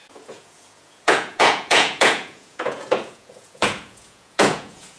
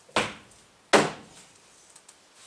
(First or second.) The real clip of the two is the second